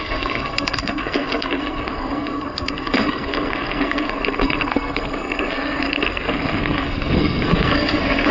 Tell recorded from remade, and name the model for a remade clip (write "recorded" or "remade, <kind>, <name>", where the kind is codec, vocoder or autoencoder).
remade, codec, SNAC